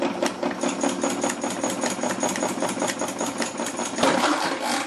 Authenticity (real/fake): real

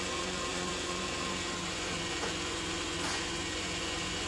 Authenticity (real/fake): fake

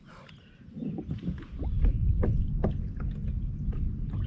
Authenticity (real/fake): real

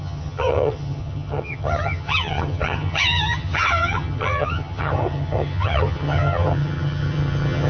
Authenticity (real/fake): fake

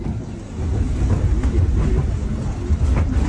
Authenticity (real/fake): real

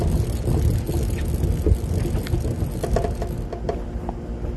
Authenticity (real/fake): real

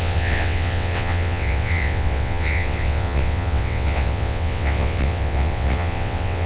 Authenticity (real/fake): fake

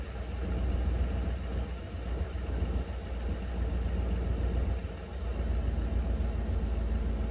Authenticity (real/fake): real